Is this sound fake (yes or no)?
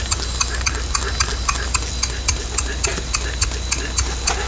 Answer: no